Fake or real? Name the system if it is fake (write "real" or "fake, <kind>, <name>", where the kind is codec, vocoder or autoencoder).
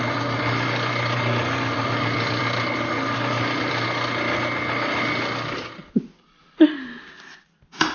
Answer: real